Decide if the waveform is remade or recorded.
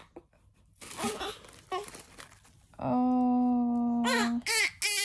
recorded